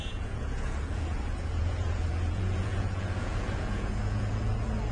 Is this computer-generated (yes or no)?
yes